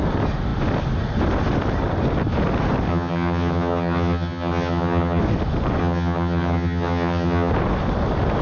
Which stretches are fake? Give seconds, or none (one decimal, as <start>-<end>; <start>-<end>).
2.9-5.2; 5.8-7.5

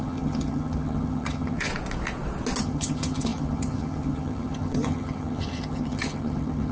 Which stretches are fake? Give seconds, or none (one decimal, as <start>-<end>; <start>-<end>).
0.0-1.7; 2.6-6.7

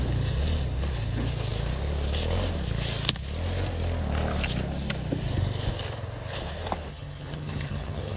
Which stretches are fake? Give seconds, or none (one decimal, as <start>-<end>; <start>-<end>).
6.9-8.2

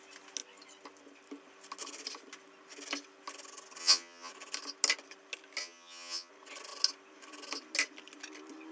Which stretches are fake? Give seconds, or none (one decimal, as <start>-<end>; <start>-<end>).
3.8-4.3; 5.6-6.3

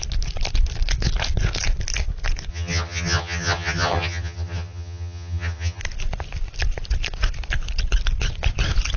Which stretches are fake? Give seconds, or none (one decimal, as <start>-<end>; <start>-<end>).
2.5-5.8